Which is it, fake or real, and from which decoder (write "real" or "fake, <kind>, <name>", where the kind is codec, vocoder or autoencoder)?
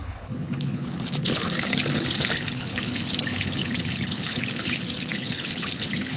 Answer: fake, codec, HILCodec